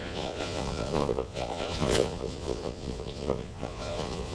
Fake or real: fake